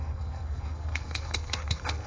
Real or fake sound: fake